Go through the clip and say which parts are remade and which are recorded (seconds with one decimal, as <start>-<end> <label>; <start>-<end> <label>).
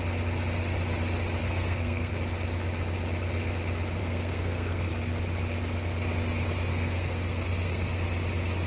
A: 0.0-1.4 recorded; 1.4-2.1 remade; 2.1-4.0 recorded; 4.0-4.9 remade; 4.9-6.7 recorded; 6.7-8.0 remade; 8.0-8.7 recorded